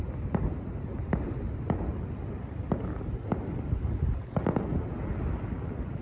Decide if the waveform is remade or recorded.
recorded